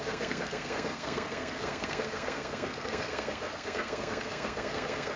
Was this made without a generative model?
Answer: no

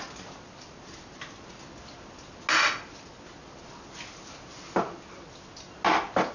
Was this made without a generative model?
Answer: yes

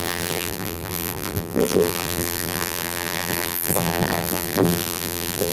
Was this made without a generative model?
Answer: no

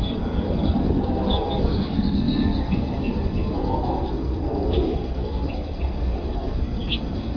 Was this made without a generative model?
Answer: no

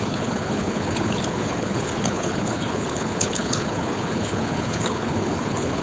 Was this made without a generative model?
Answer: no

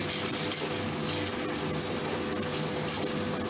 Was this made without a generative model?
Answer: yes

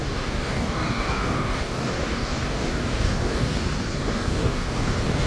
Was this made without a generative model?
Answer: no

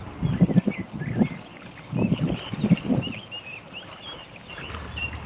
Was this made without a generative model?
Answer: yes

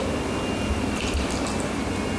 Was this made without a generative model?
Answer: yes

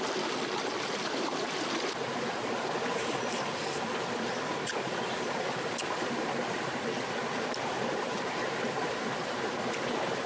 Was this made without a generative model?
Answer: yes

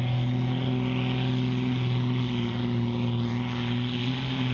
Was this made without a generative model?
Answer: yes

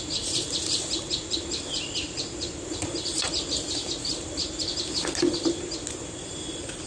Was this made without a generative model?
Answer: yes